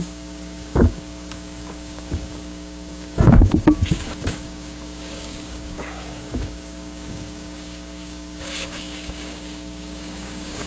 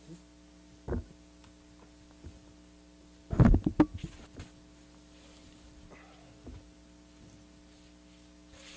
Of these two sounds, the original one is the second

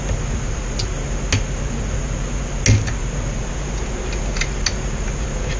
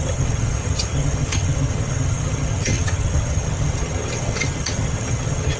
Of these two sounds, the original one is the first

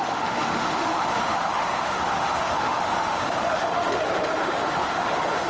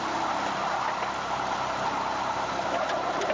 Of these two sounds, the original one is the second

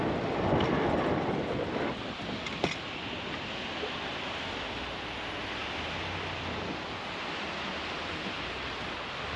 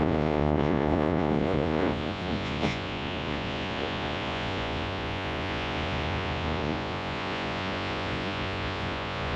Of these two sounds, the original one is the first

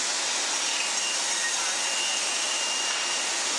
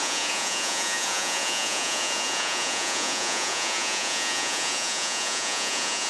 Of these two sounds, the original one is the first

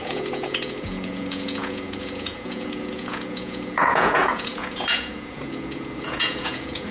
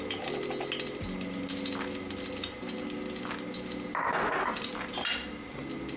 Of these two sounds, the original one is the second